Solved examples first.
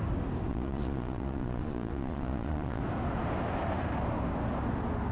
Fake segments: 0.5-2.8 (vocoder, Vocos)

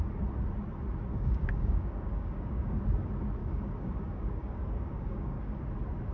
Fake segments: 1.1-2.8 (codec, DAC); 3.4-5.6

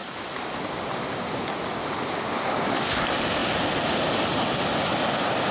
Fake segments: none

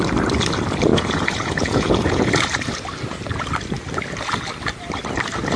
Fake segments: 0.9-2.3 (vocoder, Vocos)